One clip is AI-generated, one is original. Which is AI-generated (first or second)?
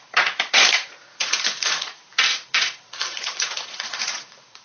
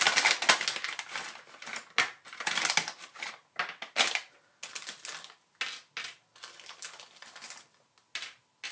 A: first